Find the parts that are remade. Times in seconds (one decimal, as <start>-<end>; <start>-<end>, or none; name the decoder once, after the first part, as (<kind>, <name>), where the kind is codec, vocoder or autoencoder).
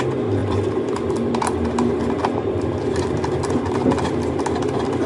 0.4-3.5 (vocoder, BigVGAN v2)